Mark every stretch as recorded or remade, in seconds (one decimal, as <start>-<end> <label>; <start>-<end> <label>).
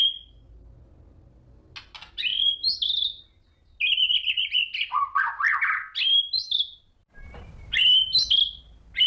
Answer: 0.0-9.1 recorded